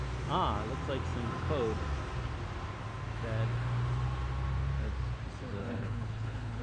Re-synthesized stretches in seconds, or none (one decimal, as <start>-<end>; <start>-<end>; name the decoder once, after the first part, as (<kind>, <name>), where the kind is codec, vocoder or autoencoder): 5.6-6.6 (codec, HILCodec)